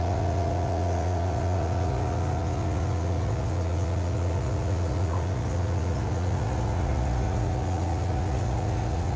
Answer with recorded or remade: remade